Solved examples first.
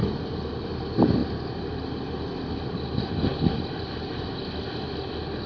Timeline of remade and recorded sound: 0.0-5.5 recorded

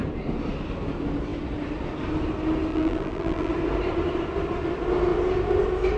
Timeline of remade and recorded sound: 0.0-2.7 recorded; 2.7-3.5 remade; 3.5-6.0 recorded

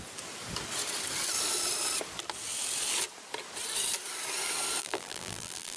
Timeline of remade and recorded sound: 0.0-4.8 recorded; 4.8-5.8 remade